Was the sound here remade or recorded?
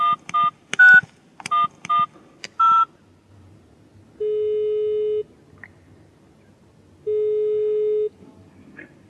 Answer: recorded